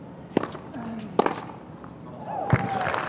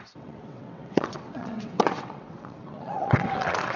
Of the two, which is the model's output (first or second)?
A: second